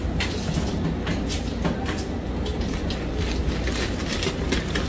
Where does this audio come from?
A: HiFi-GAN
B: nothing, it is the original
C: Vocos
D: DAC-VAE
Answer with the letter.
B